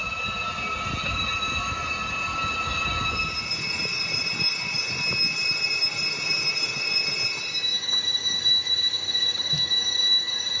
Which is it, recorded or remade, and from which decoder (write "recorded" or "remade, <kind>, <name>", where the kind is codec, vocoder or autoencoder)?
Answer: recorded